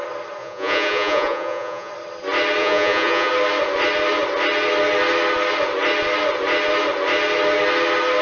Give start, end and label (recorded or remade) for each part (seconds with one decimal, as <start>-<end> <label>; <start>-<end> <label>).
0.0-0.4 recorded; 0.4-1.9 remade; 1.9-2.6 recorded; 2.6-3.3 remade; 3.3-8.2 recorded